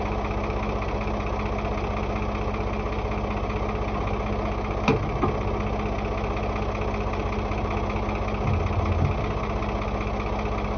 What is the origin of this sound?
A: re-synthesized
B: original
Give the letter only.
B